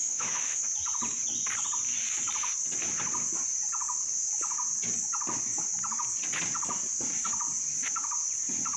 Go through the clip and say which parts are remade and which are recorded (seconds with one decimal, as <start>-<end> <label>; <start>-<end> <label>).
0.0-0.6 remade; 0.6-8.8 recorded